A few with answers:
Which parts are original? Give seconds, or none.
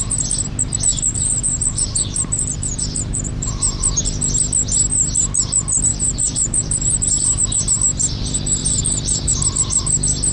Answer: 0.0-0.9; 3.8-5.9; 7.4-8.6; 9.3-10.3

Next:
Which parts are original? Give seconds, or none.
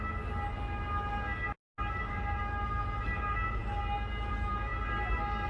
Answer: 0.0-5.5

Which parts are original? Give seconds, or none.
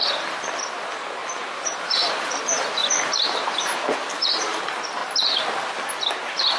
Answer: 0.0-1.2; 2.4-2.8; 4.6-6.6